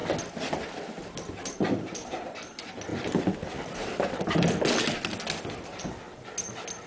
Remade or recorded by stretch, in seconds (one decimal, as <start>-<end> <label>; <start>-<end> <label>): 0.0-1.0 recorded; 1.0-1.6 remade; 1.6-2.9 recorded; 2.9-4.2 remade; 4.2-6.9 recorded